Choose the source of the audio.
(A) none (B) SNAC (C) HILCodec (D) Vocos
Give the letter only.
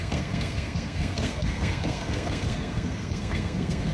B